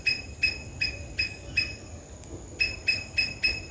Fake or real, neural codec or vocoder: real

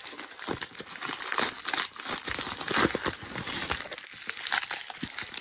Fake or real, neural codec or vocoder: real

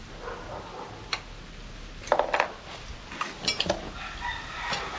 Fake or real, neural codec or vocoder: real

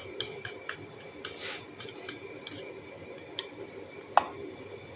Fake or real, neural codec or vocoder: real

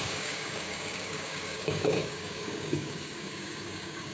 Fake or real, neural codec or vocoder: fake, codec, DAC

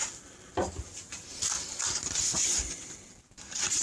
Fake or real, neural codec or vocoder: fake, vocoder, BigVGAN v2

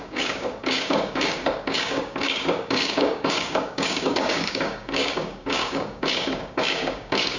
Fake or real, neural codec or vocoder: fake, codec, DAC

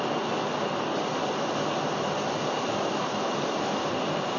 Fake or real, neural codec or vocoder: real